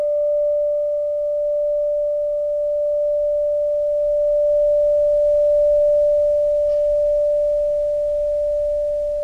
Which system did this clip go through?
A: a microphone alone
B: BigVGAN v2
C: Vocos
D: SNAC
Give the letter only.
A